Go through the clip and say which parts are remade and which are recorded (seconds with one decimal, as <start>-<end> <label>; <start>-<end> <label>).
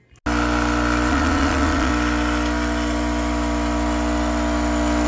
0.0-1.1 recorded; 1.1-1.9 remade; 1.9-5.1 recorded